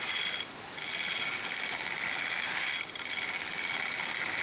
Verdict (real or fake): real